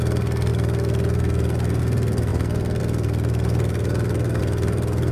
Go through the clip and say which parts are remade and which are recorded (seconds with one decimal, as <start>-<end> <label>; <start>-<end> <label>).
0.0-5.1 remade